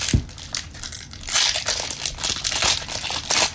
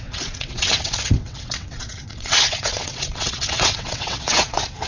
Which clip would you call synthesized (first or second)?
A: second